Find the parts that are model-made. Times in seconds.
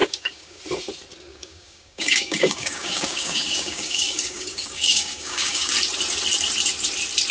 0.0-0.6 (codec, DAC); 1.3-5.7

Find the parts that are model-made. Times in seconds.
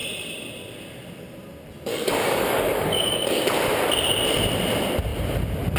1.9-3.4 (codec, DAC)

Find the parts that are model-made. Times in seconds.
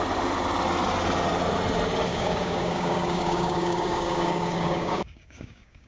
2.1-5.9 (codec, DAC)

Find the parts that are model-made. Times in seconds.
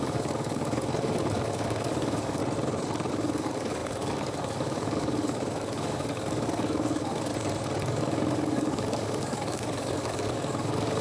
0.0-2.4 (codec, DAC); 3.1-7.3; 7.8-11.0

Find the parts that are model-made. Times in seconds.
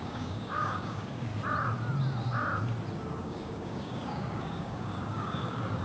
0.0-1.3 (codec, DAC); 3.2-5.8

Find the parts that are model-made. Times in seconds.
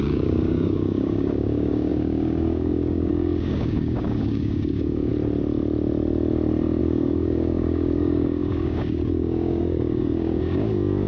0.0-5.1 (codec, DAC); 6.8-11.1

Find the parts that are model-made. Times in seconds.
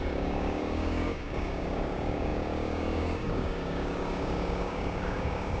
0.0-5.6 (codec, DAC)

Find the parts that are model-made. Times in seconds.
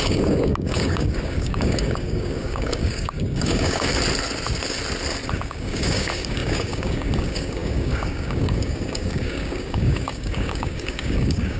0.0-3.9 (codec, DAC); 5.3-11.6